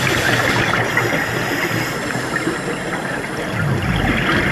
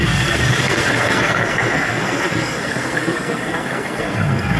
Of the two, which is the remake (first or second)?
second